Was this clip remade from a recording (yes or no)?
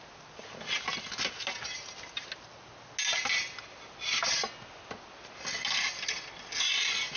no